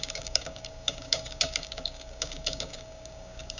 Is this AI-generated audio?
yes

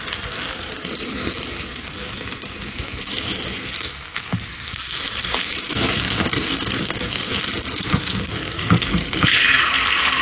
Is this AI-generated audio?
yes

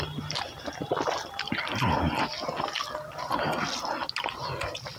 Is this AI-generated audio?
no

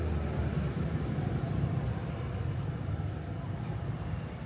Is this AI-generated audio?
no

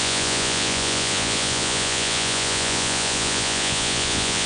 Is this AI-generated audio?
yes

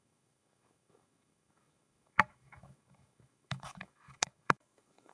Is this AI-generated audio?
yes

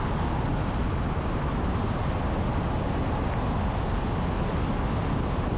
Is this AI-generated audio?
no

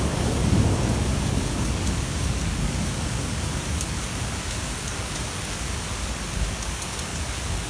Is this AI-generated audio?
yes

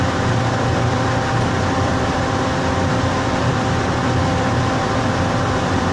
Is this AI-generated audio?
yes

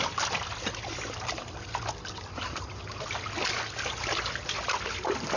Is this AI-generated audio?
yes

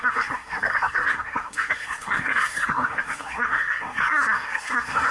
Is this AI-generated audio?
yes